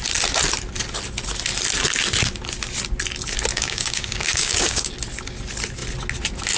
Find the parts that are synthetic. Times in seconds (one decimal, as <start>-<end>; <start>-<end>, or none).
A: 3.5-4.9